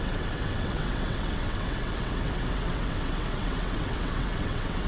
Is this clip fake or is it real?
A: fake